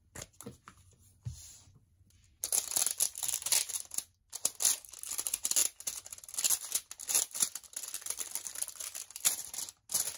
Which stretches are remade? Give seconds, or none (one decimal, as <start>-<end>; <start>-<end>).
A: none